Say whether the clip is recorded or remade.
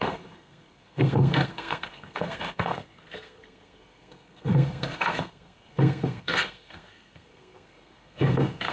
remade